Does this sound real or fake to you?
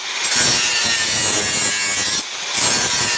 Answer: real